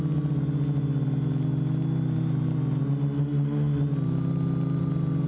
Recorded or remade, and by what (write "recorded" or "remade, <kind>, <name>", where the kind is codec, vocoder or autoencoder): recorded